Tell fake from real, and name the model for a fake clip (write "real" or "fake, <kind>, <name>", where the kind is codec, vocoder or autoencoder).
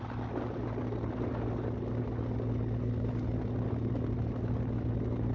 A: real